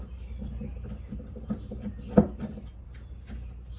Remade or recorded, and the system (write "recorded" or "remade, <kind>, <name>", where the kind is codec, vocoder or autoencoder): recorded